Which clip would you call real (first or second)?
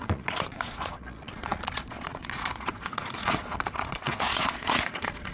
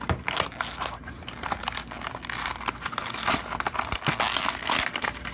second